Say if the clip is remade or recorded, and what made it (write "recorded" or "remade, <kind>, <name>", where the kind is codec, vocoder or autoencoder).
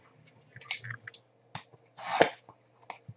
recorded